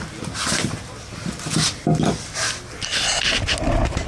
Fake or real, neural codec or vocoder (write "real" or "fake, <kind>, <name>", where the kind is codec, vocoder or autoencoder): real